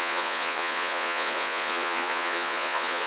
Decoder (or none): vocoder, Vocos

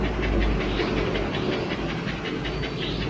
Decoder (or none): none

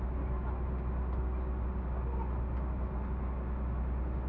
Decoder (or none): none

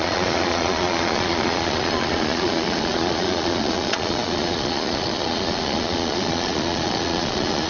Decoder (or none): vocoder, Vocos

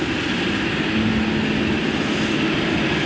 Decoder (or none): none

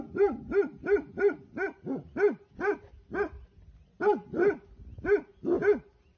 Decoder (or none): none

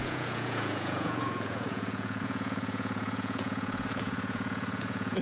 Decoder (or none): vocoder, Vocos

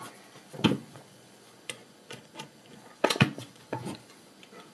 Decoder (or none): vocoder, Vocos